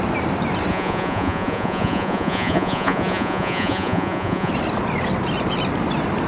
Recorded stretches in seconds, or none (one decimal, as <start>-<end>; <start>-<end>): 0.0-0.7; 4.5-6.3